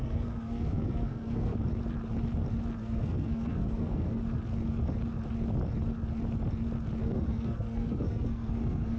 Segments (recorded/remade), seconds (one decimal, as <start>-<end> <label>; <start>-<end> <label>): 0.0-1.5 remade; 1.5-2.8 recorded; 2.8-4.2 remade; 4.2-7.0 recorded; 7.0-9.0 remade